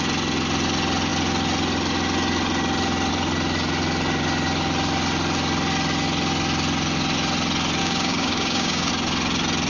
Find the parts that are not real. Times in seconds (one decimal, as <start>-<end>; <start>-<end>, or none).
7.8-8.9